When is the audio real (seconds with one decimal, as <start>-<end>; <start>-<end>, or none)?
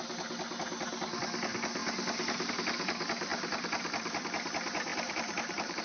0.0-3.3; 4.2-4.9